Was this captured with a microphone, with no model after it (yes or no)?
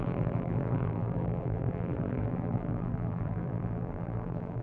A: no